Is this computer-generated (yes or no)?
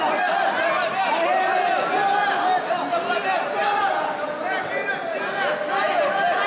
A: no